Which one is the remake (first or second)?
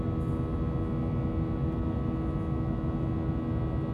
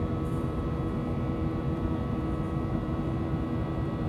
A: second